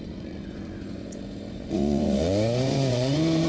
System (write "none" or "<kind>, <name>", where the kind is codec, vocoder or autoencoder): vocoder, Vocos